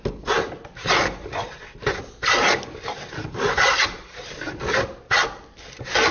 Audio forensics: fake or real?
real